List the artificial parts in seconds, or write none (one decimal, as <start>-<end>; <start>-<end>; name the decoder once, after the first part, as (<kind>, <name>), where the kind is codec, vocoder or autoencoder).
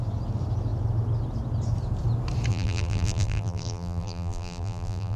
2.5-5.2 (vocoder, BigVGAN v2)